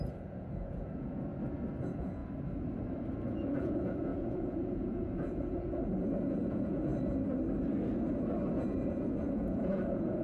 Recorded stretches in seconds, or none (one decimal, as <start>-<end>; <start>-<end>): 1.3-1.8; 2.2-3.1; 6.9-8.5